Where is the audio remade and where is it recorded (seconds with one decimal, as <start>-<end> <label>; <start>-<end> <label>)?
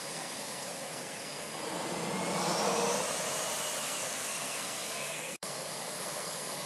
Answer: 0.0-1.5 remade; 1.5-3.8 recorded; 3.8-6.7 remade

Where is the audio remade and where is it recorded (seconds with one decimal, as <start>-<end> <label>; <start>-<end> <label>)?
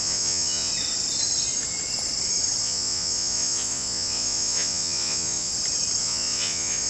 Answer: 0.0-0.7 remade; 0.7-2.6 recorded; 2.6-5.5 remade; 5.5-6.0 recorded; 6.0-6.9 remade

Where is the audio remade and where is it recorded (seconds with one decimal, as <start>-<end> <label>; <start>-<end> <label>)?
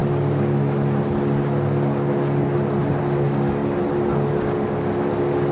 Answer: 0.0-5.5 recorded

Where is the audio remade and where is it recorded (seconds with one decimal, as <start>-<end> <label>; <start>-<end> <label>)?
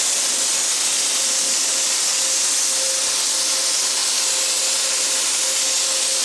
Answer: 0.0-6.2 recorded